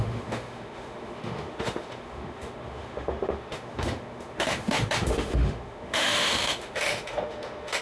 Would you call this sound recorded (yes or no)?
no